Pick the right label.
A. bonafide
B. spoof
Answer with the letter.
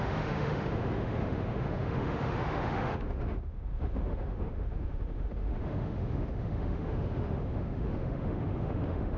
B